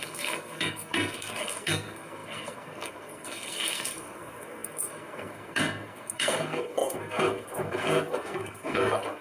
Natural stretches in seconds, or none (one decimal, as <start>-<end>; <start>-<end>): none